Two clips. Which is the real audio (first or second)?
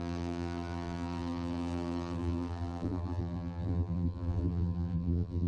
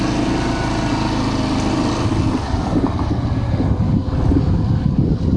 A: second